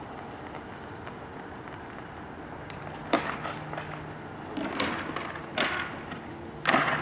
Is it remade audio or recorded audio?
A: recorded